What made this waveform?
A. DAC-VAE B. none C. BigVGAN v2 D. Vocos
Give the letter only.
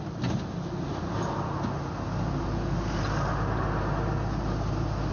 B